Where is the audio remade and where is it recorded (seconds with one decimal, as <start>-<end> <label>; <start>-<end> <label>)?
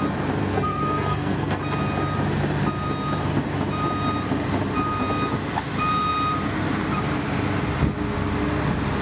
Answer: 0.0-0.4 recorded; 0.4-1.6 remade; 1.6-9.0 recorded